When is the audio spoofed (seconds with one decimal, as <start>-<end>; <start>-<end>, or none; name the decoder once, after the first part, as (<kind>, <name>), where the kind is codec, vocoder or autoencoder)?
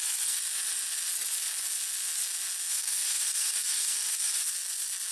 0.0-0.4 (codec, SNAC); 2.7-4.5